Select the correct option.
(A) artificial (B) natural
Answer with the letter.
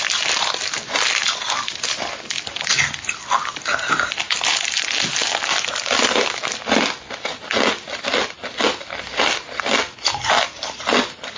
B